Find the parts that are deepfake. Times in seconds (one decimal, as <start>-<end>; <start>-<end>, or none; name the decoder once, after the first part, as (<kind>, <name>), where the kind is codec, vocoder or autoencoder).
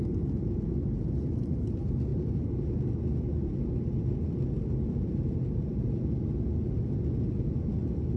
none